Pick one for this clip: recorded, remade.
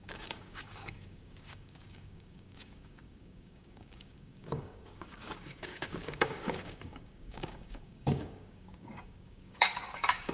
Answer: remade